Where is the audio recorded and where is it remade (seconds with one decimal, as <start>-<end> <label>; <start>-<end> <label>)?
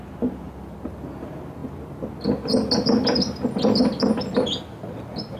0.0-5.4 recorded